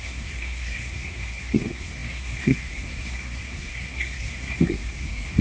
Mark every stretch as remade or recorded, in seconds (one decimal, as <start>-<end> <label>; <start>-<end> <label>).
0.0-5.4 remade

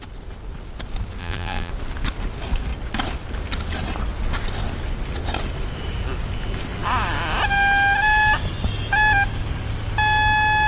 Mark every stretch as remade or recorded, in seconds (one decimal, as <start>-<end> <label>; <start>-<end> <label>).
0.0-1.2 recorded; 1.2-1.7 remade; 1.7-10.7 recorded

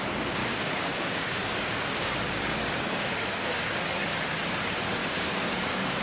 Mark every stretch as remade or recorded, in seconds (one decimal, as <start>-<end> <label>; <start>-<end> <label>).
0.0-0.4 recorded; 0.4-3.9 remade; 3.9-5.0 recorded; 5.0-6.0 remade

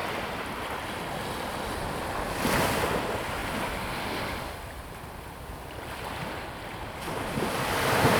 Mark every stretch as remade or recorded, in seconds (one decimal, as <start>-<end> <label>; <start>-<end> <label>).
0.0-8.2 recorded

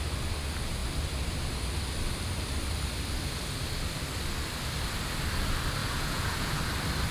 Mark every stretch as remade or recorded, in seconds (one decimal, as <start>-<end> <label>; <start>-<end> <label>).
0.0-5.8 recorded; 5.8-6.6 remade; 6.6-7.1 recorded

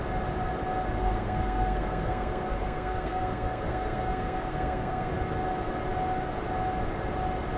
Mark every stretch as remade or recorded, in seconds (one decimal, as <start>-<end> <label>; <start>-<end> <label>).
0.0-1.0 recorded; 1.0-5.1 remade; 5.1-7.6 recorded

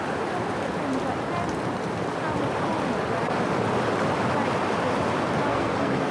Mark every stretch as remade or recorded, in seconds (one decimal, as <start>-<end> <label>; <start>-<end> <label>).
0.0-5.5 recorded; 5.5-6.1 remade